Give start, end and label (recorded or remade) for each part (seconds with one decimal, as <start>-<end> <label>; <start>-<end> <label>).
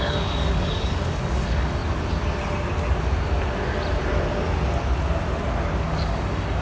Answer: 0.0-1.8 remade; 1.8-5.8 recorded; 5.8-6.6 remade